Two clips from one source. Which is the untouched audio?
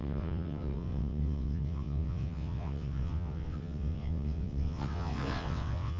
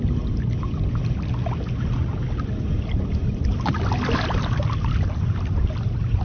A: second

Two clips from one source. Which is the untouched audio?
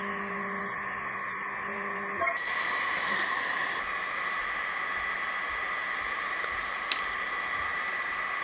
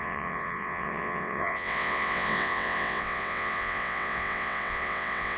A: first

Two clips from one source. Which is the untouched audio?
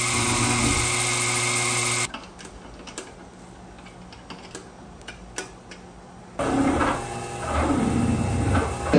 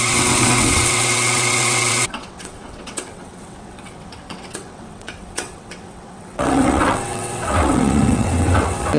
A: first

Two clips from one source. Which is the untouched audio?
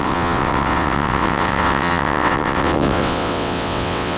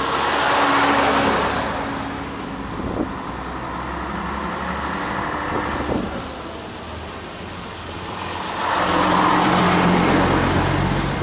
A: second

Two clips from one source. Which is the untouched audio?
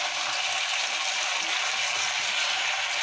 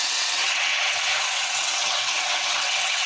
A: first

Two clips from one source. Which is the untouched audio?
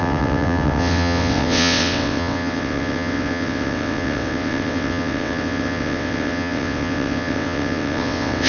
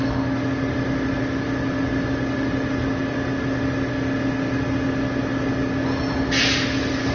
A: second